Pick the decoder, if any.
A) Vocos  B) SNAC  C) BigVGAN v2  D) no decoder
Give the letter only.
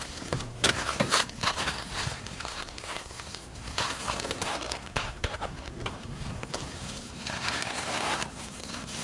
B